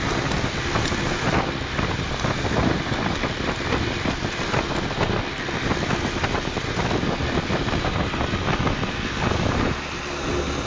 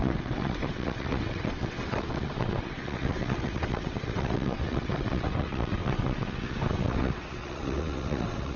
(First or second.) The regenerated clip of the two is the second